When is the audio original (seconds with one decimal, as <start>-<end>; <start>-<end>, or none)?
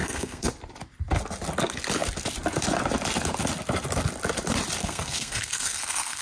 0.5-4.8